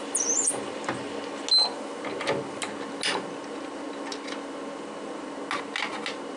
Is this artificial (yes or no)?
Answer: no